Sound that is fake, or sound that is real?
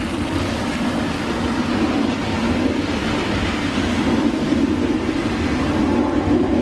real